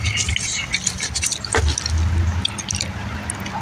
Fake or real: real